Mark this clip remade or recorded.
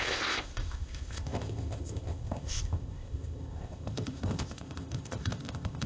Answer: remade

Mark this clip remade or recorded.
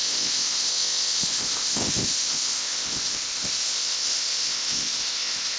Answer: remade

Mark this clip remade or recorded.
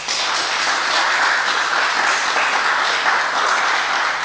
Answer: recorded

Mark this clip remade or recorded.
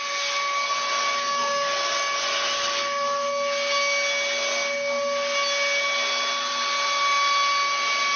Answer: recorded